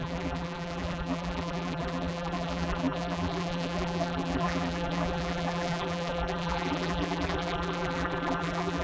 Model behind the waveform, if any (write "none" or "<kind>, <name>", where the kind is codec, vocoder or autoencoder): vocoder, BigVGAN v2